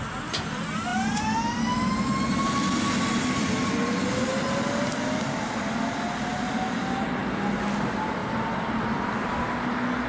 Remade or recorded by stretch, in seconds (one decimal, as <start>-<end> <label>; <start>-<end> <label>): 0.0-10.1 recorded